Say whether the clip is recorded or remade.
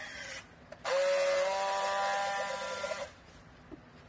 recorded